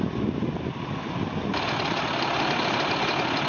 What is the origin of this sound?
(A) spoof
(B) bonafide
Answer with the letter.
B